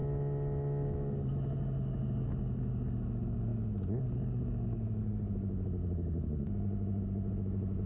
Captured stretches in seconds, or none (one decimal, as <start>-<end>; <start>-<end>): 0.0-7.9